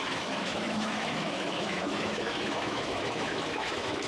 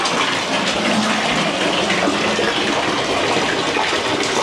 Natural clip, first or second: second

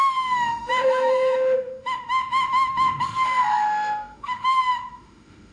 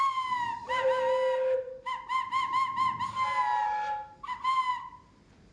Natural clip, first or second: second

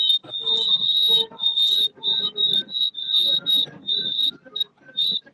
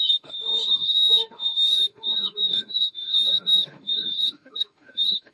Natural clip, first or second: first